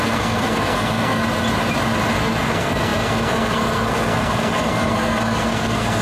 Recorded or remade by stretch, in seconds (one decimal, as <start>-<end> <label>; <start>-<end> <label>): 0.0-1.2 remade; 1.2-2.2 recorded; 2.2-6.0 remade